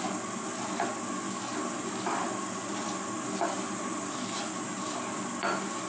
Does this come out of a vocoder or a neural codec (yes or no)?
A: no